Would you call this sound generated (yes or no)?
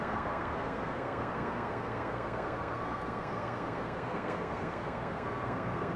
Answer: yes